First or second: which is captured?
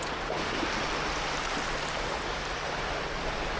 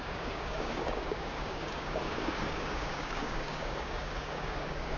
first